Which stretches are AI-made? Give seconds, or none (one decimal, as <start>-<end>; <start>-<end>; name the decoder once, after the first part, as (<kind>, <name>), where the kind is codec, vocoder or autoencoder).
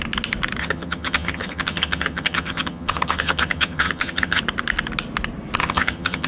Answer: 0.6-4.4 (vocoder, HiFi-GAN); 5.6-6.3